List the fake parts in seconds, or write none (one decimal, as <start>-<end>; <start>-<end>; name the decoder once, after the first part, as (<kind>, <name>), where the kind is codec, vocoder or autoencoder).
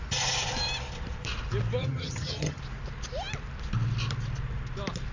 1.8-2.6 (vocoder, HiFi-GAN)